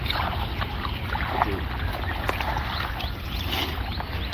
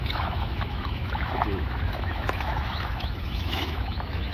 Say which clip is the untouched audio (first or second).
first